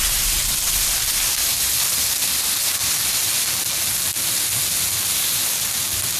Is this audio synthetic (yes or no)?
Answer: no